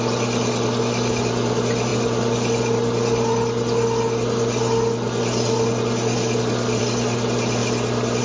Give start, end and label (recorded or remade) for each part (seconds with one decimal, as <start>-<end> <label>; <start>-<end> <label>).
0.0-8.2 recorded